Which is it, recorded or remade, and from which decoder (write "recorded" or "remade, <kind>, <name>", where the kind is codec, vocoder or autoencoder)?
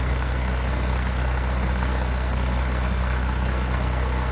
remade, codec, SNAC